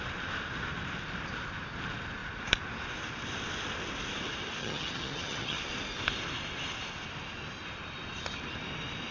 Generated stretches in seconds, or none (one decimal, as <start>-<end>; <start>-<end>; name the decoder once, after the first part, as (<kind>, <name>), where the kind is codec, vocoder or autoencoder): 4.6-5.6 (vocoder, HiFi-GAN)